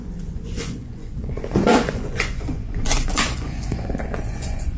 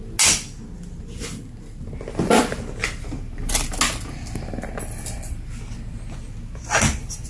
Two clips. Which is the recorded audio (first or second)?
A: second